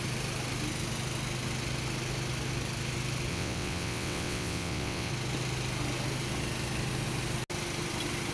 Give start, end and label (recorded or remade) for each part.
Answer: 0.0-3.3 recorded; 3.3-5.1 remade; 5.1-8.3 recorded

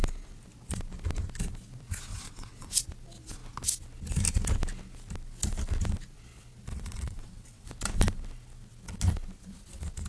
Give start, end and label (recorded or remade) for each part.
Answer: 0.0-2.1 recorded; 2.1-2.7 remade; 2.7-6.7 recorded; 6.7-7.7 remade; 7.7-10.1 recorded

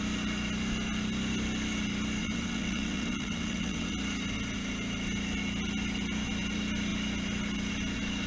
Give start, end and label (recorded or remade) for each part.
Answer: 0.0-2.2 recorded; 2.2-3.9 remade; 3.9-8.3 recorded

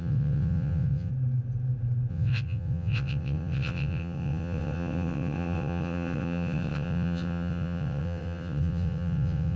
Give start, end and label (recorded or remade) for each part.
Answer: 0.0-1.1 remade; 1.1-2.1 recorded; 2.1-9.6 remade

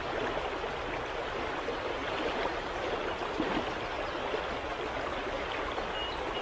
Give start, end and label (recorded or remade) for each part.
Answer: 0.0-6.4 recorded

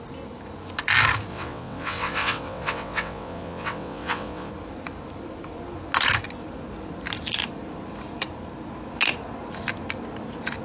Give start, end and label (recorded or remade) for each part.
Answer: 0.0-1.3 recorded; 1.3-4.5 remade; 4.5-10.6 recorded

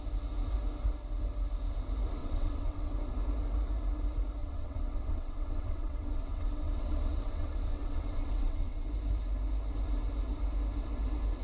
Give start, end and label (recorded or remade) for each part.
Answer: 0.0-2.2 recorded; 2.2-2.9 remade; 2.9-4.4 recorded; 4.4-8.9 remade; 8.9-11.4 recorded